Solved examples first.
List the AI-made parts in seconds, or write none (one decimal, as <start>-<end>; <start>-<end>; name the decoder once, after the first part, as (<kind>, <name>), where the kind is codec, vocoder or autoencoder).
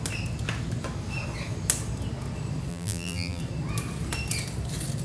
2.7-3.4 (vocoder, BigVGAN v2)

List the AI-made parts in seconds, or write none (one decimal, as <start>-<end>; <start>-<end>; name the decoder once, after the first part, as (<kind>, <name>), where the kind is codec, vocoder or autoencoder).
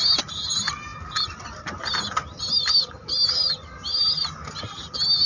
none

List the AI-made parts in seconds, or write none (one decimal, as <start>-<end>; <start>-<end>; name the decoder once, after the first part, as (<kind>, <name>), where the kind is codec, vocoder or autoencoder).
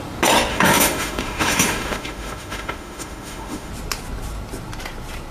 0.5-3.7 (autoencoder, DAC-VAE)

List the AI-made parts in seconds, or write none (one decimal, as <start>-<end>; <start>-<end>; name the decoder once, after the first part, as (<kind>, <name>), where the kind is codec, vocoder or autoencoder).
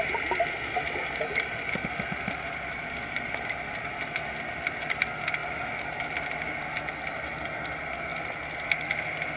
none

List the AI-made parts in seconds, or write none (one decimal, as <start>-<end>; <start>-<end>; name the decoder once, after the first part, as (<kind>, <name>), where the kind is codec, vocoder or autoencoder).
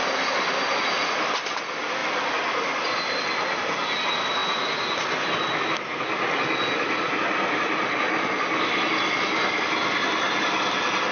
none